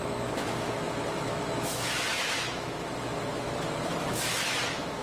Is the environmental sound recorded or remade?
remade